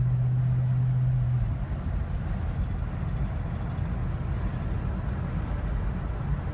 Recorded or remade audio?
recorded